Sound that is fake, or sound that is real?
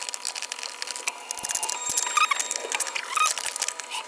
real